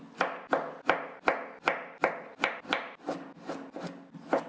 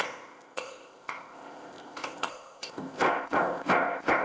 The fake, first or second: second